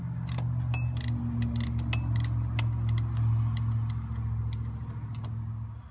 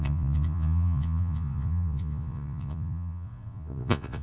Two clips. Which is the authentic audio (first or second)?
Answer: first